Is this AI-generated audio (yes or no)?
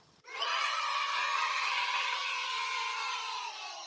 yes